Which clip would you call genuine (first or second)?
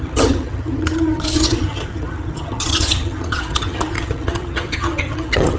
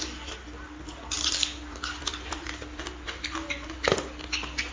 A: second